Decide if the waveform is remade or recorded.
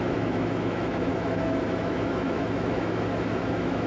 remade